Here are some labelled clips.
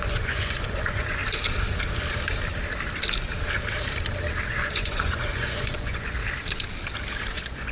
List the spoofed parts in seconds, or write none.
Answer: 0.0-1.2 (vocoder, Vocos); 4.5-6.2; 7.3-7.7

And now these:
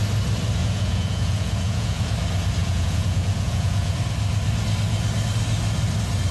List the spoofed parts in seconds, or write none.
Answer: 0.6-2.1 (vocoder, Vocos); 2.6-3.9

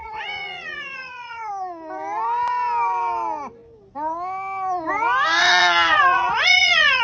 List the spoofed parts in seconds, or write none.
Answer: 0.0-1.5 (vocoder, Vocos); 5.4-7.0

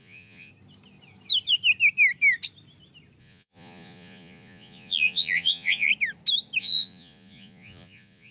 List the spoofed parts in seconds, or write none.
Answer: 0.0-0.5 (vocoder, Vocos); 3.2-5.9; 6.6-8.3

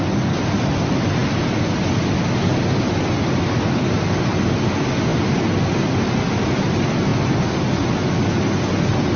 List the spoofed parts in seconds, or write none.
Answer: none

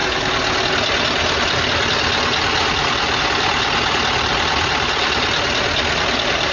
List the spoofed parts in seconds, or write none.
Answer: none

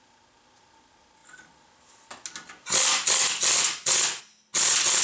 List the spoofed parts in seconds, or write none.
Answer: none

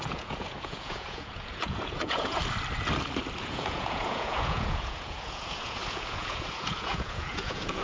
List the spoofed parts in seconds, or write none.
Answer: 0.0-2.4 (vocoder, Vocos); 3.4-7.8